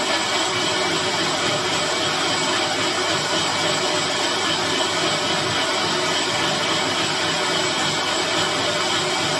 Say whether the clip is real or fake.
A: real